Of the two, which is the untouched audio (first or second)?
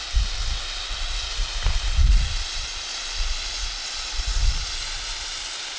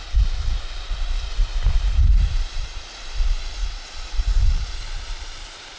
first